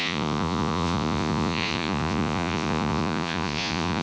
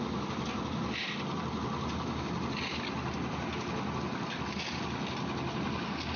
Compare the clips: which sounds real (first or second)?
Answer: second